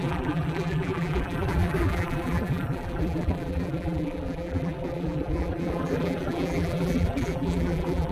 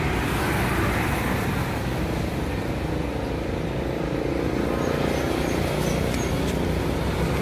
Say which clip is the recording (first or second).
second